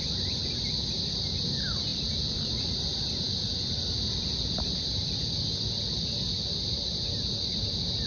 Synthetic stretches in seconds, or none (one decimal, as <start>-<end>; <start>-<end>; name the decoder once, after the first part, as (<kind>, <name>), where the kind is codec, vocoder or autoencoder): 1.9-5.1 (vocoder, BigVGAN v2)